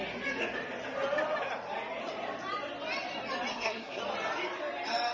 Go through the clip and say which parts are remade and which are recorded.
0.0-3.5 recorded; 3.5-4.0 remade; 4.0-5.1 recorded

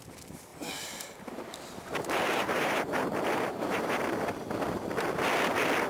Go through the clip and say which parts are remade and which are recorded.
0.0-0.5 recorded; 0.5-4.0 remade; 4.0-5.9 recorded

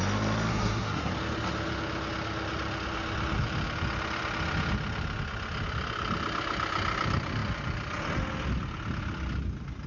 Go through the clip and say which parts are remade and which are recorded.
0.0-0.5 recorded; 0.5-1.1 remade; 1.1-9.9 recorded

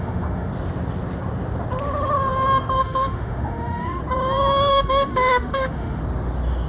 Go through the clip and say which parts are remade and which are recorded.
0.0-0.5 remade; 0.5-2.8 recorded; 2.8-4.0 remade; 4.0-4.7 recorded; 4.7-6.0 remade; 6.0-6.7 recorded